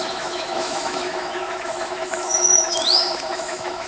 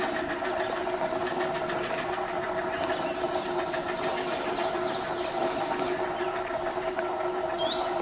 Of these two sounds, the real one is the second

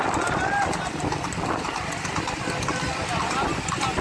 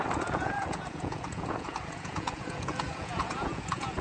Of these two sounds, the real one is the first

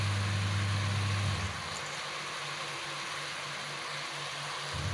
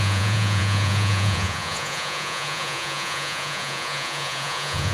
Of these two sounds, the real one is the first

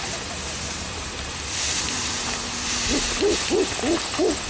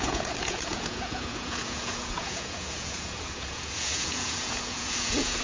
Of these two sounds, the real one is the first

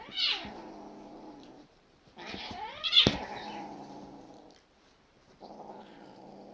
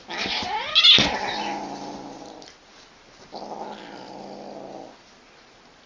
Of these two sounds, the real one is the second